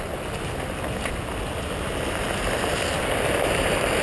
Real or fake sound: real